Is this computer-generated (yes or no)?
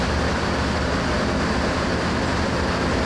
no